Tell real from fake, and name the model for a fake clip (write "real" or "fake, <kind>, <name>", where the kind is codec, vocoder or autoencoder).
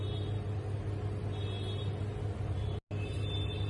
real